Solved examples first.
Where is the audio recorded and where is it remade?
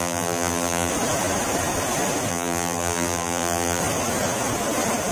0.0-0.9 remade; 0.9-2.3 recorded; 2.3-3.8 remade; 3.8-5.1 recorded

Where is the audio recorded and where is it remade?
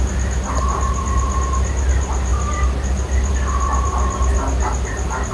0.0-2.3 recorded; 2.3-3.3 remade; 3.3-5.3 recorded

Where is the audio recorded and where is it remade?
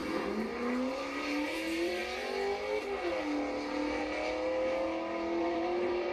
0.0-0.9 recorded; 0.9-2.0 remade; 2.0-5.4 recorded; 5.4-6.1 remade